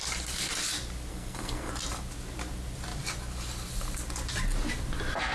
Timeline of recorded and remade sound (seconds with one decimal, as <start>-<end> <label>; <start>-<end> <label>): 0.0-1.1 recorded; 1.1-1.7 remade; 1.7-5.3 recorded